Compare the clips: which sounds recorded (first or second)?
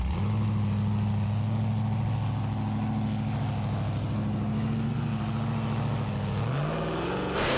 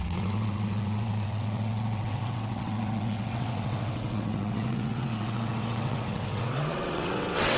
first